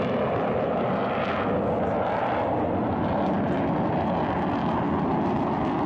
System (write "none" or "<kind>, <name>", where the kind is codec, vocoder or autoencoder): none